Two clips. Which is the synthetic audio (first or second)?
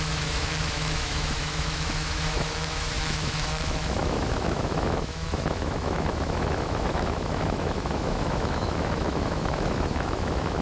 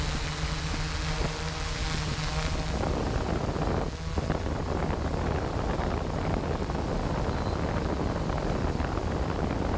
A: first